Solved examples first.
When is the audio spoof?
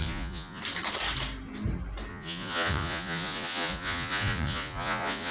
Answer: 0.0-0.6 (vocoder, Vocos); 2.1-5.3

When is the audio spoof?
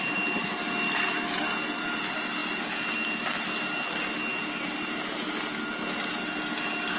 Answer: none